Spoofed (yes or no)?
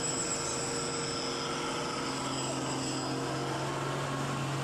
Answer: no